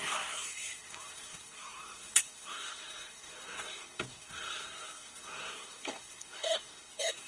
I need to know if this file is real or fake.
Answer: fake